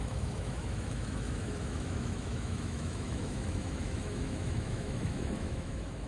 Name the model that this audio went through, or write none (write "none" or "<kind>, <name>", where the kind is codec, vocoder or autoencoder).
autoencoder, DAC-VAE